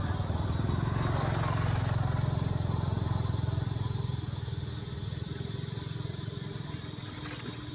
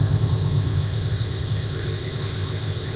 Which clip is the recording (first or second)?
first